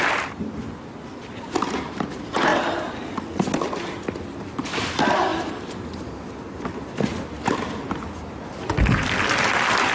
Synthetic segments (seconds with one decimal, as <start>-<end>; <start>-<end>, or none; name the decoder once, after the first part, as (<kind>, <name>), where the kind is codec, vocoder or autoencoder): none